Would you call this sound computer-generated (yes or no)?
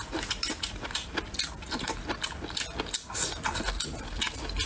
no